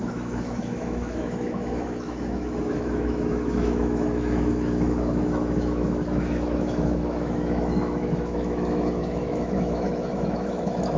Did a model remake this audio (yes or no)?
yes